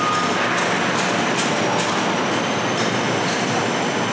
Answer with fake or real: real